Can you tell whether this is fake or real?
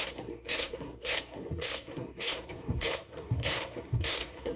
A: fake